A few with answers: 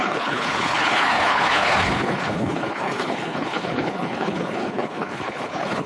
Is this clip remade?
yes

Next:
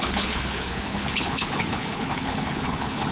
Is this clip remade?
yes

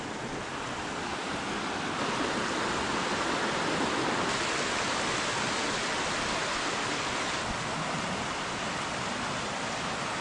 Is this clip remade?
no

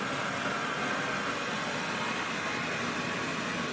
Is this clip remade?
no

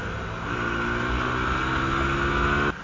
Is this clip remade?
no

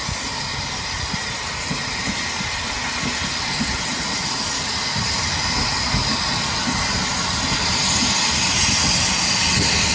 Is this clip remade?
no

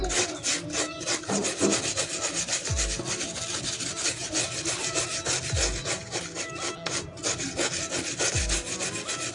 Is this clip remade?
no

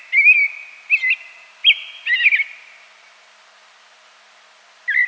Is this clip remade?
no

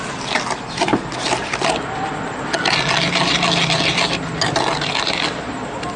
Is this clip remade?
no